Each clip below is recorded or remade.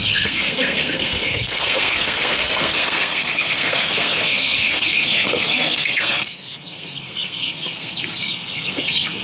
remade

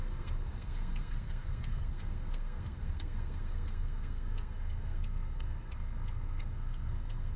remade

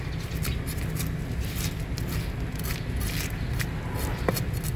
recorded